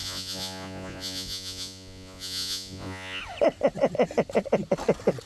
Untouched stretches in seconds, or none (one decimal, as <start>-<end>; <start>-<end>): 3.2-5.3